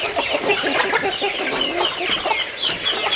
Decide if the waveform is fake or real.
real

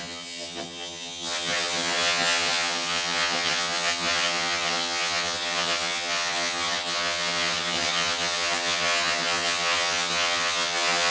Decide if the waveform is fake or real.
fake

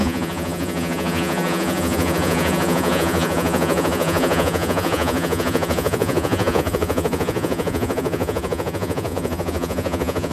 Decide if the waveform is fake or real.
fake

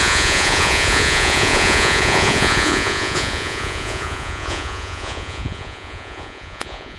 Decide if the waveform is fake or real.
fake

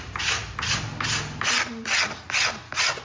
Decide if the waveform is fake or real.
real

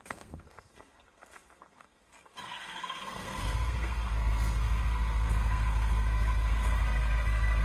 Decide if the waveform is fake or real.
fake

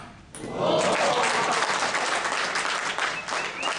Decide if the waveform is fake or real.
real